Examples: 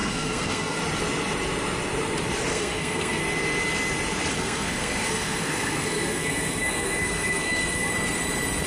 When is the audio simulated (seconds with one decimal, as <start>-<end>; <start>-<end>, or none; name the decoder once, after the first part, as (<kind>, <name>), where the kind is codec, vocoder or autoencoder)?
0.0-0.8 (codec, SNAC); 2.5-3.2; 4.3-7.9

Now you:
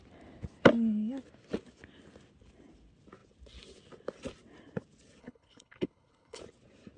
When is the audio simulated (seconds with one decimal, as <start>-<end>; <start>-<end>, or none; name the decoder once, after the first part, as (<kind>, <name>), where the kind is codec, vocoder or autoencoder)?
5.2-6.4 (codec, HILCodec)

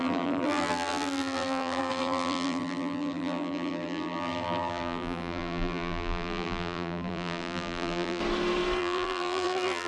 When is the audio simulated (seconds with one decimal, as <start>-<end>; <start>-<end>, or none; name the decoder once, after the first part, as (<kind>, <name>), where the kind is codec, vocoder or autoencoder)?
0.0-8.2 (vocoder, BigVGAN v2); 8.8-9.9

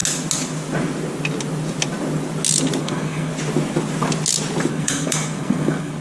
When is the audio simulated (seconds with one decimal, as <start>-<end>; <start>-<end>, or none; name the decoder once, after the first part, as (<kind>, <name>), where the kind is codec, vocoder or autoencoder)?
2.8-3.3 (codec, SNAC); 4.7-6.0

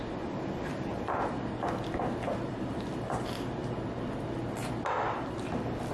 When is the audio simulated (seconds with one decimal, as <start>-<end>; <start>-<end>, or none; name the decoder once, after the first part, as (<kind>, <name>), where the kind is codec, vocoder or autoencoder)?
none

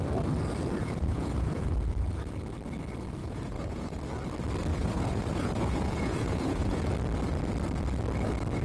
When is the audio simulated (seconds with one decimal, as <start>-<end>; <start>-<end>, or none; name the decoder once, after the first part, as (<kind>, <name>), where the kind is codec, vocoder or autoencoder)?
0.8-1.7 (vocoder, Vocos); 3.2-4.0; 4.7-6.8